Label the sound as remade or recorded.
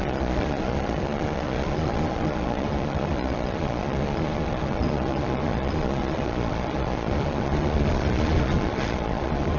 remade